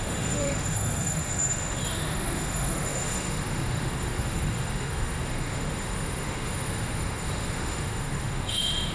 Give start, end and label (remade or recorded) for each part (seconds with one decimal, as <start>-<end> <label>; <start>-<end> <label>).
0.0-8.9 remade